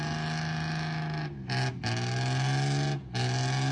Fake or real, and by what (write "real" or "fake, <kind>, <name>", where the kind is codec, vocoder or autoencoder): real